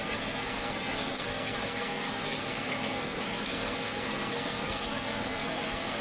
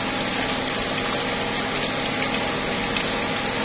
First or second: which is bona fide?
second